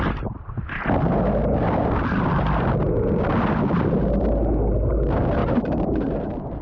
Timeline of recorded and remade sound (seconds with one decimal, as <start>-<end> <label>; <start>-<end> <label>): 0.0-5.4 recorded; 5.4-6.6 remade